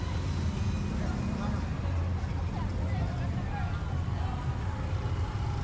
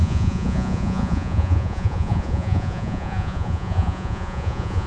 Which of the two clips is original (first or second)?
first